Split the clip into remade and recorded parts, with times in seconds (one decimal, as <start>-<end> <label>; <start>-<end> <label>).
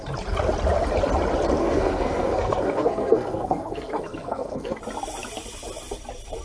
0.0-1.6 recorded; 1.6-4.8 remade; 4.8-6.4 recorded